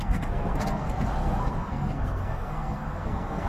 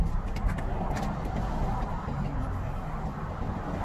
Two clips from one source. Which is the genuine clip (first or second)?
second